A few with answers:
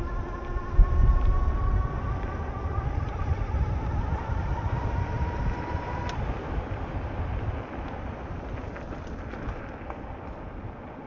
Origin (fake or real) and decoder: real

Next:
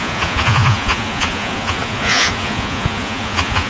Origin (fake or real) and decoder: fake, vocoder, Vocos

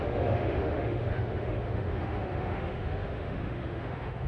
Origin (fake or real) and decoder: fake, autoencoder, DAC-VAE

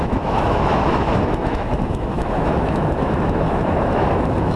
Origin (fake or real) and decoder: fake, autoencoder, DAC-VAE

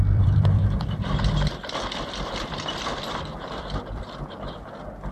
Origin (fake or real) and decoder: fake, vocoder, BigVGAN v2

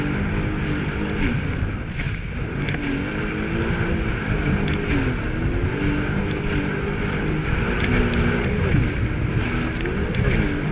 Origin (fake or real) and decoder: real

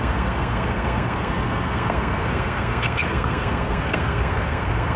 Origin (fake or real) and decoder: fake, codec, SNAC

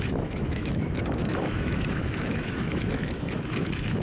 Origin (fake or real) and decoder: fake, autoencoder, DAC-VAE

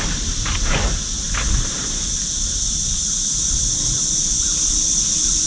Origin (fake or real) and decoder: real